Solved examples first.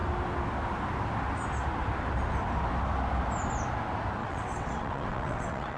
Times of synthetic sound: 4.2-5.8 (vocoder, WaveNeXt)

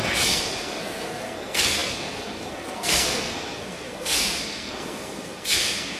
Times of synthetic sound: 0.0-6.0 (codec, SNAC)

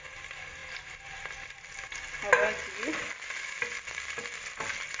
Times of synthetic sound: none